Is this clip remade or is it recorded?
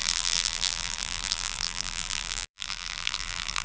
remade